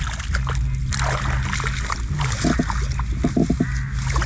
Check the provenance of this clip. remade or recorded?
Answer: recorded